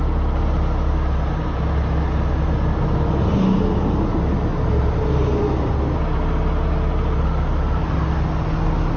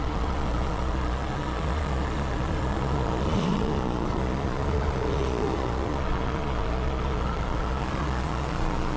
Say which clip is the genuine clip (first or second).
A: first